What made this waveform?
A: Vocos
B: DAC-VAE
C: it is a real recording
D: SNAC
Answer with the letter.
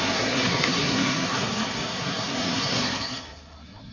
D